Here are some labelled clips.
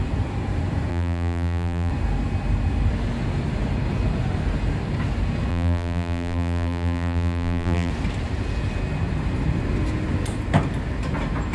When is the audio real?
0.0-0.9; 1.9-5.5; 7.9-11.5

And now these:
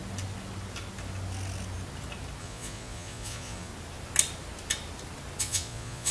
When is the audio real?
0.0-2.4; 3.7-5.4

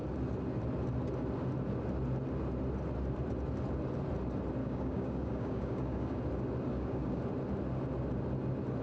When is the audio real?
0.0-4.6; 6.2-6.7; 7.2-8.8

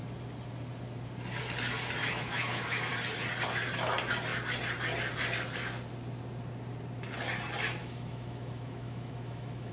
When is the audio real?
0.0-2.0; 2.9-7.8

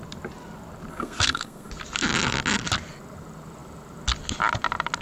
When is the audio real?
0.0-0.9; 1.7-5.0

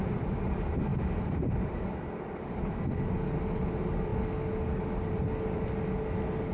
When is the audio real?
0.0-6.5